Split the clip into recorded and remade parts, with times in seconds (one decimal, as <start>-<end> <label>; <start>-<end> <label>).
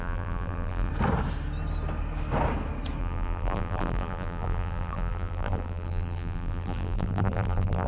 0.0-0.9 remade; 0.9-3.0 recorded; 3.0-7.9 remade